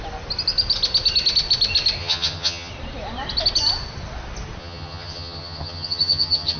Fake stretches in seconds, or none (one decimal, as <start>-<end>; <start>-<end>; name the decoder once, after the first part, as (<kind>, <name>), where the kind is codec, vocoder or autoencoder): 2.0-2.7 (vocoder, HiFi-GAN); 4.6-6.6